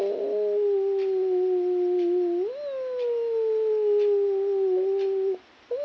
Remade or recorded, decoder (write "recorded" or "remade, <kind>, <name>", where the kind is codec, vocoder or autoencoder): recorded